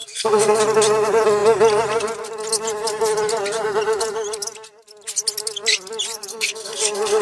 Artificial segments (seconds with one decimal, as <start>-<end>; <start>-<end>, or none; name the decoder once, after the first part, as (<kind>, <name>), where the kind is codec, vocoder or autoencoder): 0.0-0.6 (codec, SNAC); 6.3-7.2